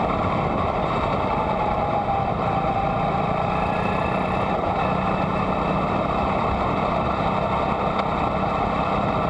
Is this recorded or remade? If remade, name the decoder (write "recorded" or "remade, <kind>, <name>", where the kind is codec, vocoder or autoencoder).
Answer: recorded